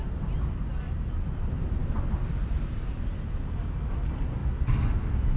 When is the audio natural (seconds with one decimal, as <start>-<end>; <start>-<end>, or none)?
0.0-5.4